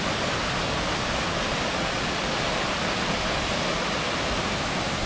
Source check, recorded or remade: recorded